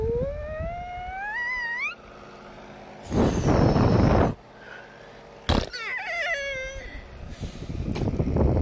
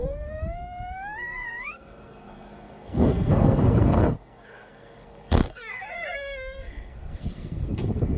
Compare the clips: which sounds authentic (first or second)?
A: first